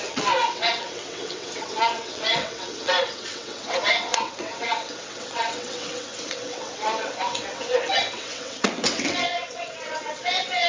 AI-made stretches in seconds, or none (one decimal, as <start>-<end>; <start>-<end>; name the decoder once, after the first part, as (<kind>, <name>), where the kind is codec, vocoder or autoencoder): 0.0-10.7 (vocoder, WaveNeXt)